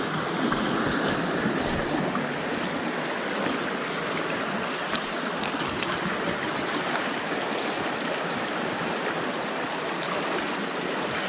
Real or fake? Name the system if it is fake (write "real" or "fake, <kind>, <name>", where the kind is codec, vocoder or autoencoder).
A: real